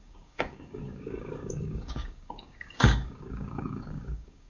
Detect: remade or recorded remade